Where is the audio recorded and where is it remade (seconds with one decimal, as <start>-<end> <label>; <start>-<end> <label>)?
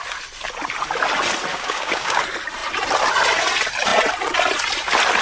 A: 0.0-1.5 recorded; 1.5-2.2 remade; 2.2-5.2 recorded